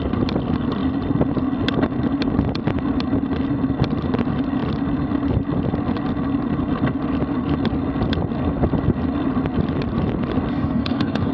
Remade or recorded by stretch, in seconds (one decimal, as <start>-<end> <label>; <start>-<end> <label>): 0.0-10.5 recorded; 10.5-11.3 remade